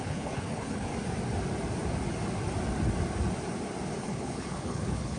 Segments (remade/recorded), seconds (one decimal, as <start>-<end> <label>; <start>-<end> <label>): 0.0-0.9 remade; 0.9-4.0 recorded; 4.0-5.2 remade

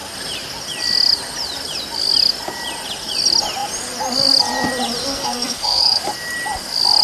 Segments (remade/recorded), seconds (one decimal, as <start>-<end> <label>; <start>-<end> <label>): 0.0-5.0 recorded; 5.0-6.0 remade; 6.0-7.0 recorded

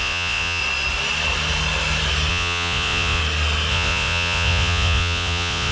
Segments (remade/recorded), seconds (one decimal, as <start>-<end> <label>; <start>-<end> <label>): 0.0-0.6 remade; 0.6-2.3 recorded; 2.3-3.2 remade; 3.2-3.7 recorded; 3.7-5.7 remade

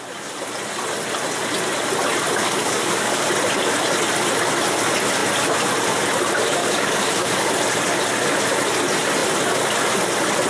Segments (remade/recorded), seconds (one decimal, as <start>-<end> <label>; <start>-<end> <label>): 0.0-2.4 recorded; 2.4-3.3 remade; 3.3-6.6 recorded; 6.6-7.5 remade; 7.5-10.5 recorded

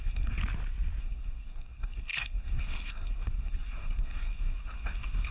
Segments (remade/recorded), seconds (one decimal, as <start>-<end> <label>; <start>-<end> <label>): 0.0-0.4 remade; 0.4-1.0 recorded; 1.0-5.3 remade

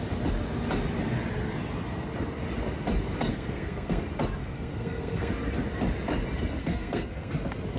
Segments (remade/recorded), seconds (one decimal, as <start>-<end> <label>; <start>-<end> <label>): 0.0-3.3 recorded; 3.3-4.0 remade; 4.0-4.4 recorded; 4.4-5.3 remade; 5.3-6.6 recorded; 6.6-7.3 remade; 7.3-7.8 recorded

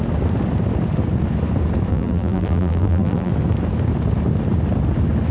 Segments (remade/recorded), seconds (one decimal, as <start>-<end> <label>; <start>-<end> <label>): 0.0-1.9 recorded; 1.9-3.3 remade; 3.3-5.3 recorded

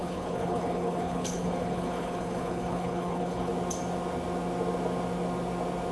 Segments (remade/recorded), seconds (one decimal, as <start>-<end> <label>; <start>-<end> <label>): 0.0-3.5 remade; 3.5-5.9 recorded